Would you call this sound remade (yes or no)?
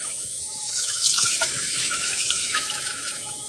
yes